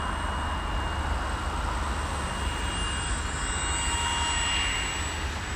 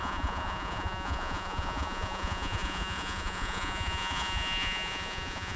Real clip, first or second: first